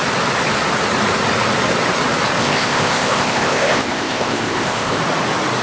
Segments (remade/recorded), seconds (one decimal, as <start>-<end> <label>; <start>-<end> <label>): 0.0-2.4 recorded; 2.4-5.0 remade; 5.0-5.6 recorded